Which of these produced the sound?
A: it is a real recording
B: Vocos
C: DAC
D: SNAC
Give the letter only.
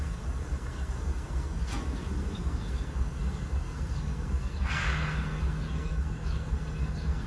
D